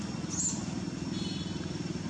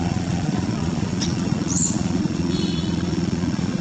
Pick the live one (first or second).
first